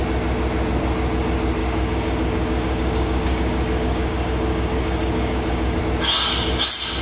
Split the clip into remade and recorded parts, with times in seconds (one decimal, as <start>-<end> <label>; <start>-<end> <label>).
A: 0.0-1.6 recorded; 1.6-5.8 remade; 5.8-7.0 recorded